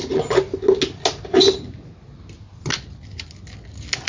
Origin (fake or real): real